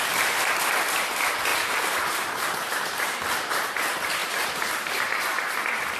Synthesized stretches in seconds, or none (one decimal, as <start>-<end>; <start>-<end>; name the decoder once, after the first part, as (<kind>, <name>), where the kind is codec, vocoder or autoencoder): 0.0-4.2 (vocoder, BigVGAN v2); 4.7-6.0